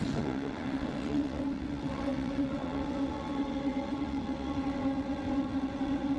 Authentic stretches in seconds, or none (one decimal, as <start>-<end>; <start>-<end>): none